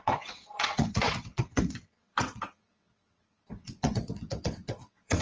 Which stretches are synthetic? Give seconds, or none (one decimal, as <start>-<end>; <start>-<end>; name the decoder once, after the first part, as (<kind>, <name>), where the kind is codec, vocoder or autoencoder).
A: 0.0-5.2 (vocoder, WaveNeXt)